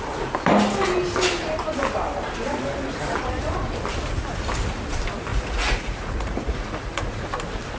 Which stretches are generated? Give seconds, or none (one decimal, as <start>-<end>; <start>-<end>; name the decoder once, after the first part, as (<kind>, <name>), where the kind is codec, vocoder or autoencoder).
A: 5.3-7.3 (vocoder, Vocos)